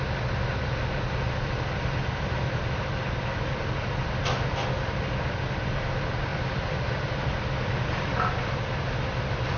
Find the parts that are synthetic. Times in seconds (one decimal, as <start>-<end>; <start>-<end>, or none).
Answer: 6.3-8.1